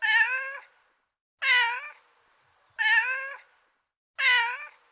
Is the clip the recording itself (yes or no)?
yes